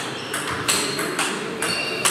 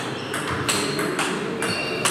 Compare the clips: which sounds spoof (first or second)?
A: first